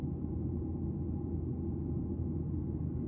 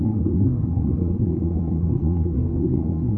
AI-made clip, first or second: second